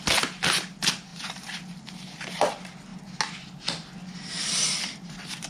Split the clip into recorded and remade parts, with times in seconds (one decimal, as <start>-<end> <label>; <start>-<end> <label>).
0.0-5.5 recorded